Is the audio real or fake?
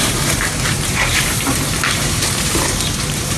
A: fake